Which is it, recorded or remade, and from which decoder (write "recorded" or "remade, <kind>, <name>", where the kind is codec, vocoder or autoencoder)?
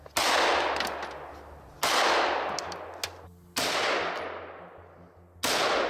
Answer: recorded